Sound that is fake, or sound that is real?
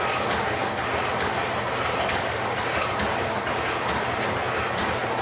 real